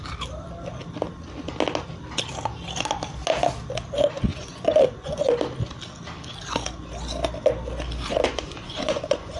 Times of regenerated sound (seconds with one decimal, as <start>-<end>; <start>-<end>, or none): 4.3-5.2; 8.1-9.4